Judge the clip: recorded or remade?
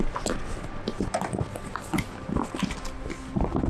recorded